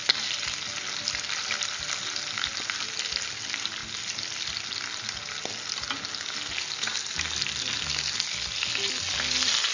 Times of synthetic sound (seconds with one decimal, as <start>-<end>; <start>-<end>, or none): none